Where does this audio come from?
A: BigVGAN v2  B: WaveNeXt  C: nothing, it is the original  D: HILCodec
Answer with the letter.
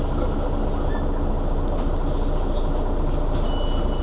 C